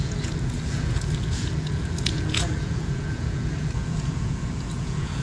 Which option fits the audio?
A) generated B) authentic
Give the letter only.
A